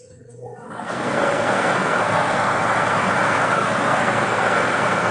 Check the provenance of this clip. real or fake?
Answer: fake